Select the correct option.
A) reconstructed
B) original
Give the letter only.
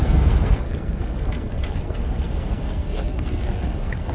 A